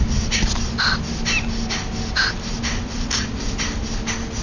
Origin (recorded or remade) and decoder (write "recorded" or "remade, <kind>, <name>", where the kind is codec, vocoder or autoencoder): recorded